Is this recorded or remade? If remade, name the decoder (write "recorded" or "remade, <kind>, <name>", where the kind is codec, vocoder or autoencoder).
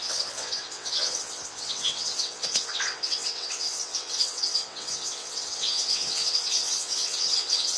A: remade, vocoder, WaveNeXt